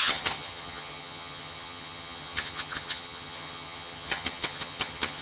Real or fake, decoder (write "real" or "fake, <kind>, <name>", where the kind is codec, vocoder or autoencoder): fake, vocoder, HiFi-GAN